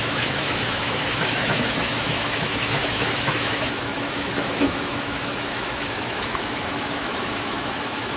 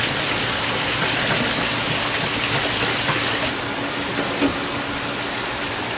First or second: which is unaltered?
second